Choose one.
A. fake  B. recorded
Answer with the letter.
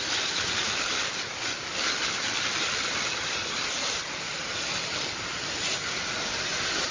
B